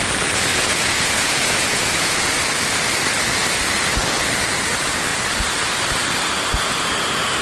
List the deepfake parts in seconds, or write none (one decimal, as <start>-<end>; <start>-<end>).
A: 0.5-2.4